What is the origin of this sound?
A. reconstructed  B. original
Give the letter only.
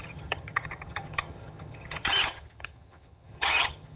A